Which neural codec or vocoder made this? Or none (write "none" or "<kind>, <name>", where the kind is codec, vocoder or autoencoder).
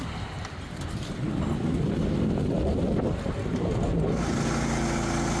none